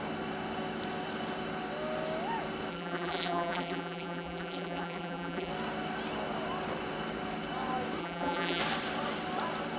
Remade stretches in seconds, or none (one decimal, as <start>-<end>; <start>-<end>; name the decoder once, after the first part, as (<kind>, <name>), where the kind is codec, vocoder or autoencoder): 2.7-5.5 (vocoder, BigVGAN v2); 8.0-8.6